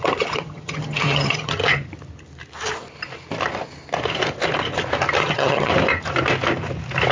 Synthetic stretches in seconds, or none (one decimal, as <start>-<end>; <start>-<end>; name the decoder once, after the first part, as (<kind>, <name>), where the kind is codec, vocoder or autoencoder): 0.0-1.6 (vocoder, HiFi-GAN); 5.2-5.7